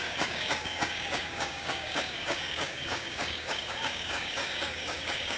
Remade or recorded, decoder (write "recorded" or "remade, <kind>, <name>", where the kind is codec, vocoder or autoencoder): remade, codec, DAC